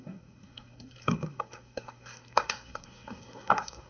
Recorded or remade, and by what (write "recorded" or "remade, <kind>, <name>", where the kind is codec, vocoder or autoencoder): remade, codec, SNAC